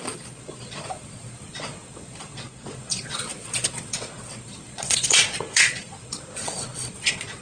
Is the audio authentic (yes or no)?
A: no